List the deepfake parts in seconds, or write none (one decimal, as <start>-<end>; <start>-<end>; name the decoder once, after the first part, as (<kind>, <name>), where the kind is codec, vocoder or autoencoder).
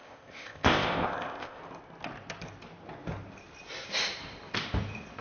0.0-1.6 (codec, ZipCodec)